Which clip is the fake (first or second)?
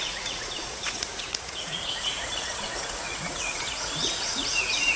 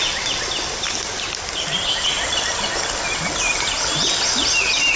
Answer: first